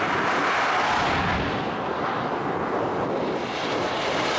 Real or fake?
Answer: real